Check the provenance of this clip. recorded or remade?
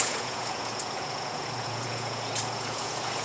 remade